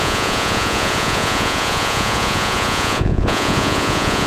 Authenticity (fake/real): fake